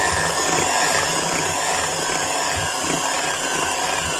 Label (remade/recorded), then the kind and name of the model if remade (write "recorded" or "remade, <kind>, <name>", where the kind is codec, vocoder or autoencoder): recorded